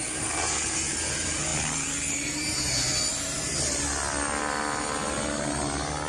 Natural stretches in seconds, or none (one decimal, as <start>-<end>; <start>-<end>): 1.5-2.4; 2.9-6.1